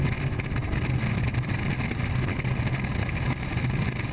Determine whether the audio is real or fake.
real